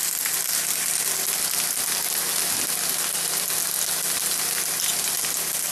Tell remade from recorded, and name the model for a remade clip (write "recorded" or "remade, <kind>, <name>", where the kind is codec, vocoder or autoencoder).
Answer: recorded